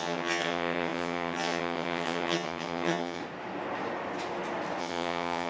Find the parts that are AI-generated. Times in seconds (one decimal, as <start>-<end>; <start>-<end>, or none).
0.0-3.2; 4.8-5.5